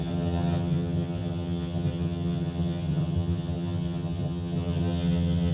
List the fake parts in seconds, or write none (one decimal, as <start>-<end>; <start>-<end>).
0.0-5.5

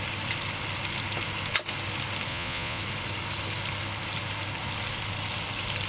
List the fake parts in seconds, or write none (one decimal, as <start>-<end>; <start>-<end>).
2.3-2.8

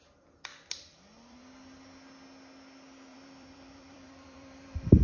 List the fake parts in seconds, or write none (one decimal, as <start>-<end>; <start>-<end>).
0.5-1.4; 3.1-5.0